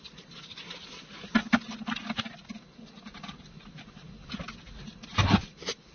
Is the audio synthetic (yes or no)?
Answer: no